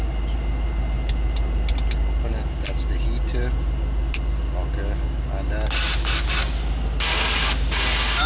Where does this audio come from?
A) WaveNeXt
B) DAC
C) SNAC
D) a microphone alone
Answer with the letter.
D